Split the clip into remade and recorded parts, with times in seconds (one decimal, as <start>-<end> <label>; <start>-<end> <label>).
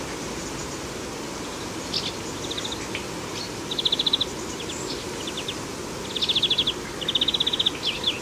0.0-8.2 recorded